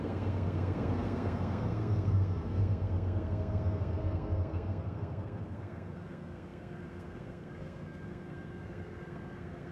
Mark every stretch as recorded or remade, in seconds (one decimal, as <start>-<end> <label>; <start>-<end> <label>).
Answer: 0.0-9.7 remade

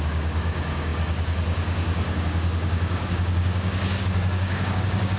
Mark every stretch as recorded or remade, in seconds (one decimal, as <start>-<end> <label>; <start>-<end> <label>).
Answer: 0.0-5.2 remade

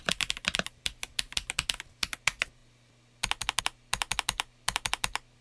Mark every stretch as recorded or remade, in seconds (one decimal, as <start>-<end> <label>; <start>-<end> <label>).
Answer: 0.0-5.4 recorded

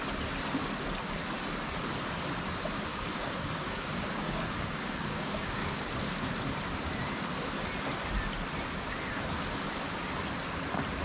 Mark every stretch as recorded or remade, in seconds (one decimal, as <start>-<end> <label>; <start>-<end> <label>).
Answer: 0.0-2.9 recorded; 2.9-5.8 remade; 5.8-11.0 recorded

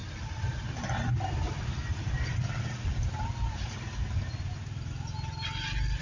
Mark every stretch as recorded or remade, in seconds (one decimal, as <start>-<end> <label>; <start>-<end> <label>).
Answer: 0.0-6.0 recorded